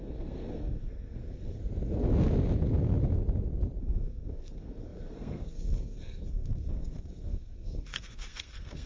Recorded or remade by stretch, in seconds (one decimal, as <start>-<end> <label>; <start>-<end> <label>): 0.0-1.6 remade; 1.6-3.8 recorded; 3.8-8.9 remade